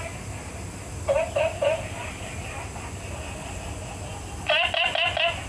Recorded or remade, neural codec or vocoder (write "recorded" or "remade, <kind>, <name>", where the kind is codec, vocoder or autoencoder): recorded